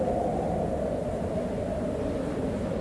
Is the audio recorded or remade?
recorded